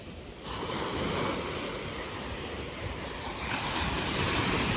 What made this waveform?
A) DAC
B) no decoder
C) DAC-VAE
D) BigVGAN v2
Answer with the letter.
D